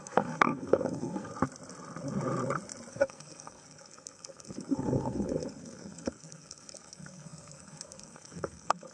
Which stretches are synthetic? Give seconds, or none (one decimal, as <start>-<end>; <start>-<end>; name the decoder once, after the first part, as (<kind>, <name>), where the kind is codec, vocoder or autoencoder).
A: 0.0-1.3 (codec, SNAC); 2.9-8.9